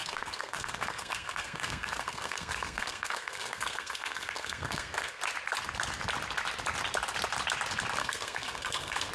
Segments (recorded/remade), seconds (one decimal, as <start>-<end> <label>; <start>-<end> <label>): 0.0-5.2 remade; 5.2-8.0 recorded; 8.0-9.1 remade